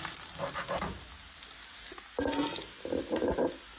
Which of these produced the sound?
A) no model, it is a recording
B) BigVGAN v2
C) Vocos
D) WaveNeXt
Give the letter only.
A